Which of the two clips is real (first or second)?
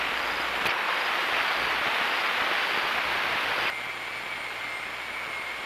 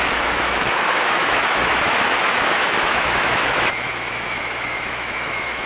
first